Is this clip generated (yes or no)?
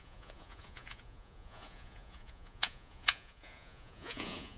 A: yes